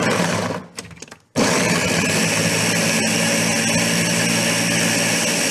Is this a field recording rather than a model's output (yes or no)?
yes